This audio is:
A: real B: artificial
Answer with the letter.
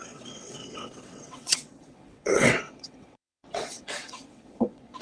B